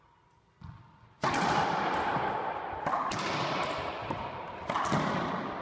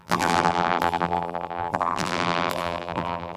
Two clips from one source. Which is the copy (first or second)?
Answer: second